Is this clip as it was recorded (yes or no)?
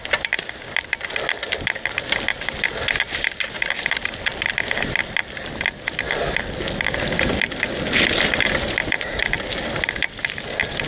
yes